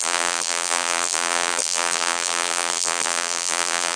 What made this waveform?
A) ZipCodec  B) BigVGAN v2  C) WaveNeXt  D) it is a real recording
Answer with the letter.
B